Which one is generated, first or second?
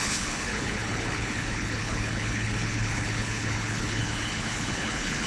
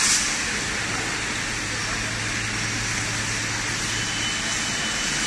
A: first